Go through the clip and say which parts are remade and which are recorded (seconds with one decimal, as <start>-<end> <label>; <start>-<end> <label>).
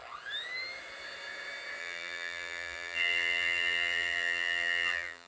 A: 0.0-1.8 recorded; 1.8-5.3 remade